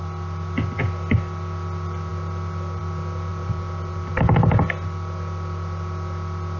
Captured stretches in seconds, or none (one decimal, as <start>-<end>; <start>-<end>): 0.0-6.6